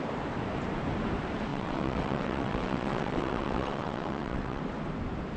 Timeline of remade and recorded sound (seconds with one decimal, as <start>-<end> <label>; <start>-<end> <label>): 0.0-1.5 recorded; 1.5-4.6 remade; 4.6-5.4 recorded